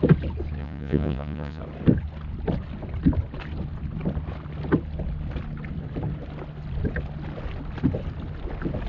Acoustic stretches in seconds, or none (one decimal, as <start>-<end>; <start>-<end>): 0.0-0.6; 1.6-8.9